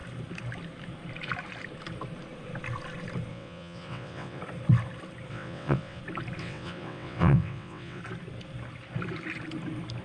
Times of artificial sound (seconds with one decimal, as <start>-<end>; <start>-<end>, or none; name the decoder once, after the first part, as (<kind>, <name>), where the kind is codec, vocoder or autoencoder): 3.3-4.4 (vocoder, WaveNeXt); 5.3-6.0; 6.4-8.0